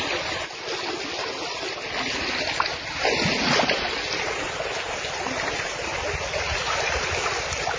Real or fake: real